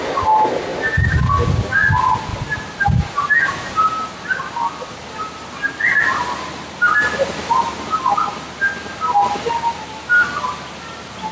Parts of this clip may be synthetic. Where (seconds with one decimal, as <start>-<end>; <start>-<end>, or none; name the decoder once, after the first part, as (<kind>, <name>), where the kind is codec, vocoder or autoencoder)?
none